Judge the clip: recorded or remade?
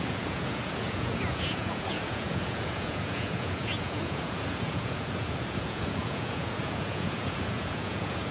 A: remade